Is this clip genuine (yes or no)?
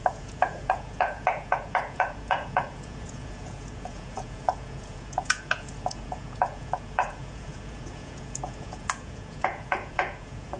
no